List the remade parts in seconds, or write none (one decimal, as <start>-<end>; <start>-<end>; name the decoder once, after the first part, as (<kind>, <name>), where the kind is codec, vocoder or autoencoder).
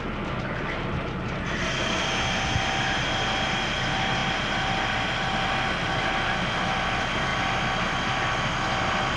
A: none